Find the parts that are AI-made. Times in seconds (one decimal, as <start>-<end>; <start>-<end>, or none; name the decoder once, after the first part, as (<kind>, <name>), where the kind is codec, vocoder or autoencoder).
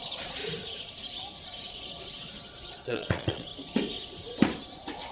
0.0-0.4 (vocoder, Vocos); 1.7-3.5